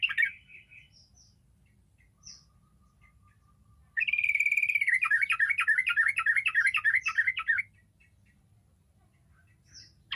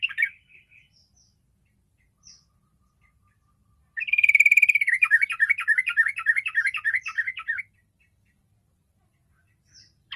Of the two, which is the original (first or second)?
first